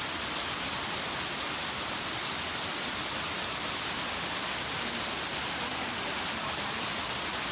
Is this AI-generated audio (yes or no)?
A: no